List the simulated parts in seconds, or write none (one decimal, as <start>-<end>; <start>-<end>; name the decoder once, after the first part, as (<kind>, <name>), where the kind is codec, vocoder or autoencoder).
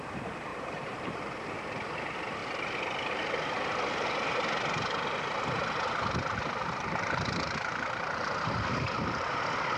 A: 0.5-1.5 (vocoder, BigVGAN v2); 6.6-9.4